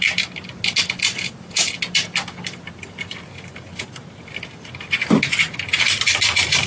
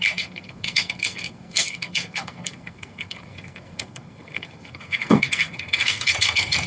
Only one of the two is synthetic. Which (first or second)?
second